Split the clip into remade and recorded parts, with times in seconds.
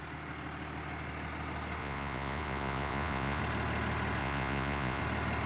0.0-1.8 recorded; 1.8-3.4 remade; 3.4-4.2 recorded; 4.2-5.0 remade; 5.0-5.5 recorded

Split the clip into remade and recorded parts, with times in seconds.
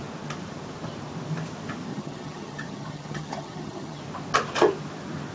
0.0-1.9 recorded; 1.9-4.0 remade; 4.0-5.3 recorded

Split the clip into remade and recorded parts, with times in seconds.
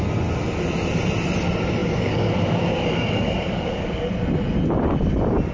0.0-1.8 recorded; 1.8-4.1 remade; 4.1-5.5 recorded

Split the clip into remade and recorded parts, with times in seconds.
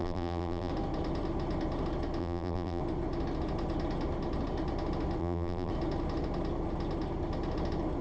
0.0-0.7 remade; 0.7-2.2 recorded; 2.2-2.8 remade; 2.8-5.2 recorded; 5.2-5.7 remade; 5.7-8.0 recorded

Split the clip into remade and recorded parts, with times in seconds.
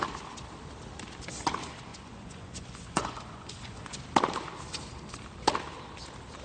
0.0-1.9 recorded; 1.9-4.0 remade; 4.0-6.4 recorded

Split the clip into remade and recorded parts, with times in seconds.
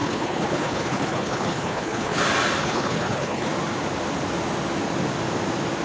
0.0-2.2 remade; 2.2-2.6 recorded; 2.6-3.5 remade; 3.5-5.8 recorded